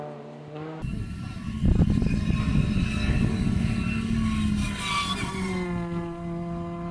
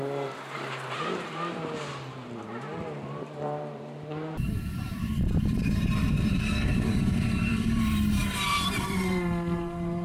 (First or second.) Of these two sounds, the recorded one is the first